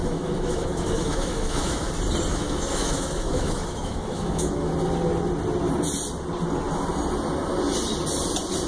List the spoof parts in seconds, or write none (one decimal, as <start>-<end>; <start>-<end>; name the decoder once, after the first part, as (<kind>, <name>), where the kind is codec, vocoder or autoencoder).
0.0-1.9 (autoencoder, DAC-VAE); 2.3-4.7

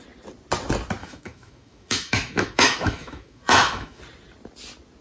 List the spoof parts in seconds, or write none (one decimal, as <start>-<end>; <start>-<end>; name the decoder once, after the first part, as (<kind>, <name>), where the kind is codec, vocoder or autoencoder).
1.0-4.0 (autoencoder, DAC-VAE)